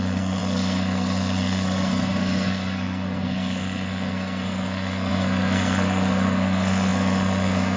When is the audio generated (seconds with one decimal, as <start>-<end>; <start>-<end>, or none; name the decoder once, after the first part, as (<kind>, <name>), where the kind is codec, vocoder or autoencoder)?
0.0-7.8 (codec, SNAC)